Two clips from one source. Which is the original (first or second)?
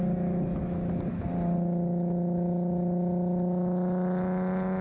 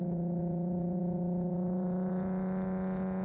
first